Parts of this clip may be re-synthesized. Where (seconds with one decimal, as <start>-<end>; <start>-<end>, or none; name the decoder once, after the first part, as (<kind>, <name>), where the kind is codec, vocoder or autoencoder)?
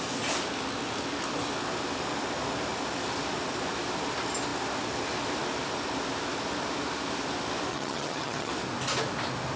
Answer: 7.7-8.5 (vocoder, HiFi-GAN)